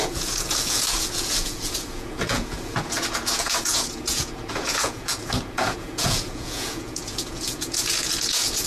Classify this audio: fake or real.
fake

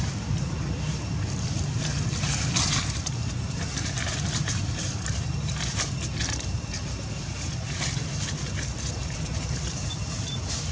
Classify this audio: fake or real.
fake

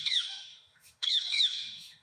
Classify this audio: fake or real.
fake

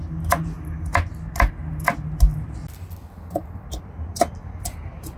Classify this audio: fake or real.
real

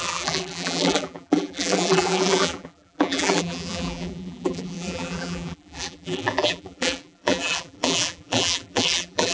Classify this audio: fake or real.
fake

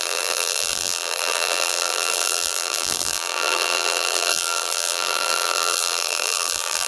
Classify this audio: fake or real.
fake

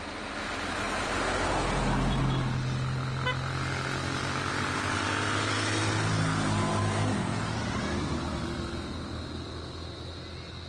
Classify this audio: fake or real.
real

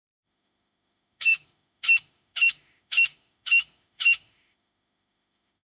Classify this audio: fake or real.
fake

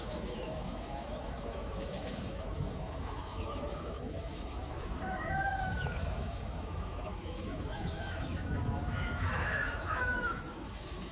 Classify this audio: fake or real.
fake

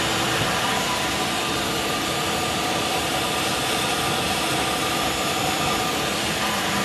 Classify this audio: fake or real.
fake